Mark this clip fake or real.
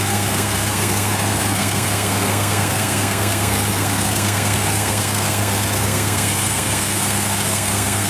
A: fake